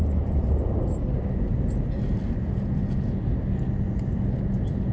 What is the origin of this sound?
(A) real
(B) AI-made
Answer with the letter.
A